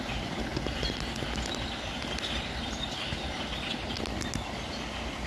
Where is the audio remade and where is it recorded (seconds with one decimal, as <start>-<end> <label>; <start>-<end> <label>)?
0.0-5.3 recorded